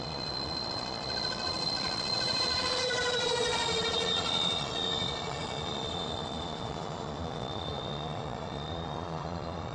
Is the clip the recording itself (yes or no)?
no